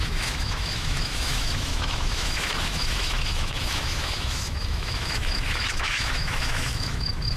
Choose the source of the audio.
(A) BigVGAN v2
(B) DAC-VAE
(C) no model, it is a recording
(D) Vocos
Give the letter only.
B